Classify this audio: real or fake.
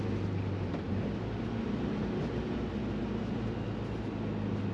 real